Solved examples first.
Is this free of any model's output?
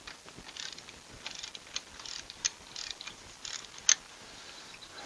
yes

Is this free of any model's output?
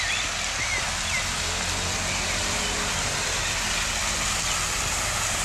yes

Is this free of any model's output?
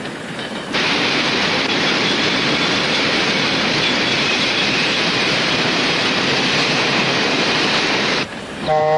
no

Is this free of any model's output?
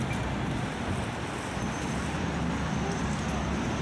yes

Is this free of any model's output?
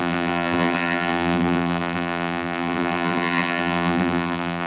no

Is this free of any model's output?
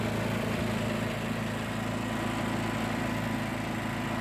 yes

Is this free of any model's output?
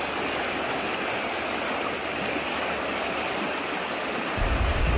yes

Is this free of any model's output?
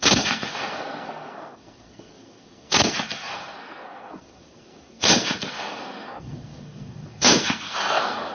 no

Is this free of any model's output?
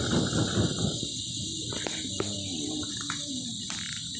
yes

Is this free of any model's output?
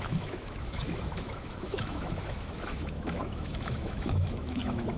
no